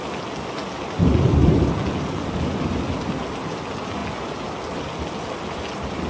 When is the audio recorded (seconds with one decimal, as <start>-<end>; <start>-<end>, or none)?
0.0-6.1